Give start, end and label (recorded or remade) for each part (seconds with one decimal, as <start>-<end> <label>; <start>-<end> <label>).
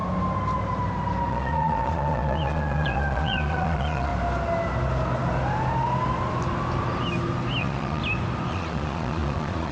0.0-1.3 recorded; 1.3-4.1 remade; 4.1-7.6 recorded; 7.6-8.0 remade; 8.0-8.5 recorded; 8.5-9.7 remade